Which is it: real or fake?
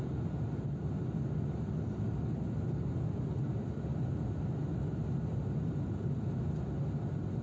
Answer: real